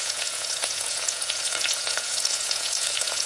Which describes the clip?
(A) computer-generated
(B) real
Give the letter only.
A